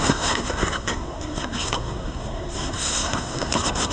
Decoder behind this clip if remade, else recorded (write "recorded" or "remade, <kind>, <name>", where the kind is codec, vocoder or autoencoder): remade, codec, SNAC